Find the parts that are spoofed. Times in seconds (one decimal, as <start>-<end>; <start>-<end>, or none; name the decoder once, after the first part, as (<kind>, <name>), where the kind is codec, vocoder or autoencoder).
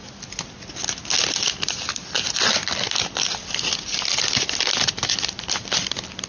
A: none